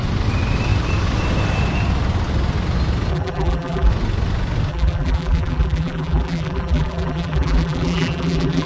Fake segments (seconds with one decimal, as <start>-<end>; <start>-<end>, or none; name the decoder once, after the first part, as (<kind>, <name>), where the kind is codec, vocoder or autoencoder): 3.1-3.9 (vocoder, BigVGAN v2); 4.7-8.7